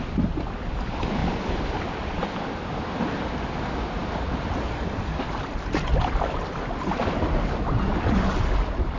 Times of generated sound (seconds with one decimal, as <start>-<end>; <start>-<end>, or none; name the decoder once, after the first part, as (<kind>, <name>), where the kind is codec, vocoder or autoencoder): none